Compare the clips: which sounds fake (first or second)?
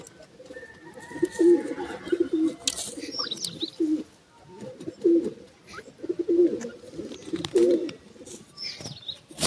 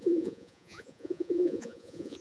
second